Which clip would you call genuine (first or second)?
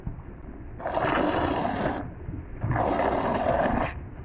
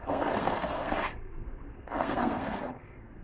first